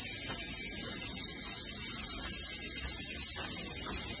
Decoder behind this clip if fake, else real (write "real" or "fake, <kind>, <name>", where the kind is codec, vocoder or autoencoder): real